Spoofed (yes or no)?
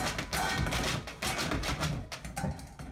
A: no